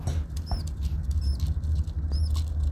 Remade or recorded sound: recorded